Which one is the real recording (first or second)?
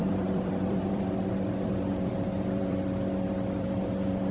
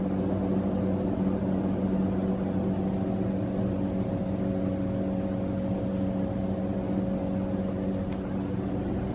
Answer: second